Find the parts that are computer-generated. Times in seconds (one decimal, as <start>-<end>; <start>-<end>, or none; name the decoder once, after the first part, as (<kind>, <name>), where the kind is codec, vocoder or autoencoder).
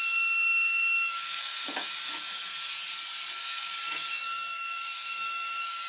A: 0.0-2.5 (codec, DAC); 3.3-5.9